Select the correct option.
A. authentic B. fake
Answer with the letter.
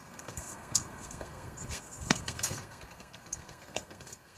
B